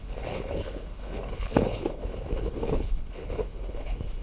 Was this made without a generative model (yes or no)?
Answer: no